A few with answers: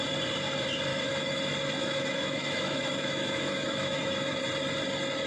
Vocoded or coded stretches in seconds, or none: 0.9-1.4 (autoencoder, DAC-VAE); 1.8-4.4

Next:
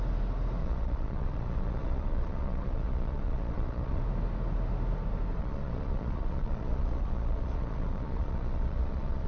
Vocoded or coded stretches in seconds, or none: 0.6-4.0 (vocoder, Vocos); 5.4-9.3

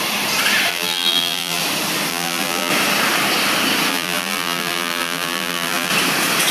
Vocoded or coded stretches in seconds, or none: 0.7-1.6 (vocoder, BigVGAN v2); 2.1-2.7; 3.9-5.9

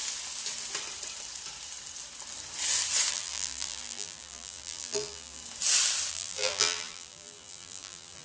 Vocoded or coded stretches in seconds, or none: 3.1-5.4 (vocoder, BigVGAN v2); 6.1-8.2

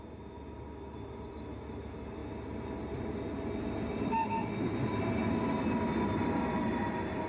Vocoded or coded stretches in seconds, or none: none

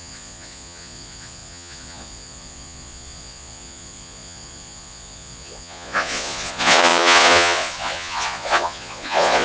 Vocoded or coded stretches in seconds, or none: 0.0-9.4 (vocoder, Vocos)

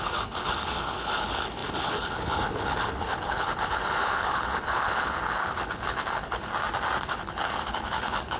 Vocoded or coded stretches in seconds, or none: 0.0-6.5 (codec, HILCodec); 7.0-8.4